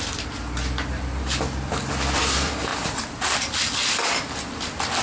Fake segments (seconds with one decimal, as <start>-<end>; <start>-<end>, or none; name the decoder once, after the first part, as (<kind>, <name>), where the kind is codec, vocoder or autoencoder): none